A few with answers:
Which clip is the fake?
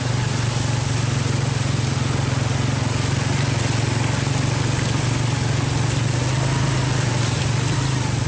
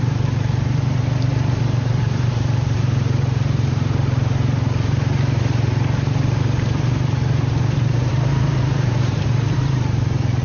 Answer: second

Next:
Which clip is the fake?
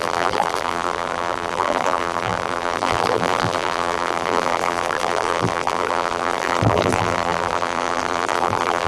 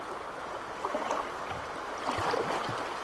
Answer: first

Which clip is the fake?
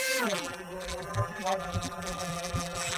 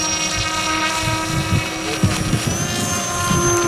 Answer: first